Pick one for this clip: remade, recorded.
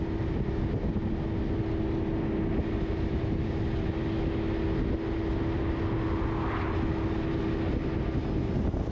recorded